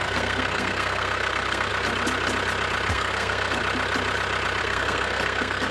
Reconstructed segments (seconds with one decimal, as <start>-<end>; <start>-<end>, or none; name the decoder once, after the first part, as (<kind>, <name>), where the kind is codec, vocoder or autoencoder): 0.0-1.7 (codec, SNAC); 2.9-3.6; 4.6-5.7